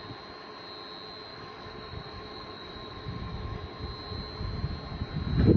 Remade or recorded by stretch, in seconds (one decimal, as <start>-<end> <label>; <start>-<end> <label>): 0.0-1.3 recorded; 1.3-3.6 remade; 3.6-5.6 recorded